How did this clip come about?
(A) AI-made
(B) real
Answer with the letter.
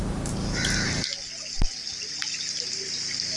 B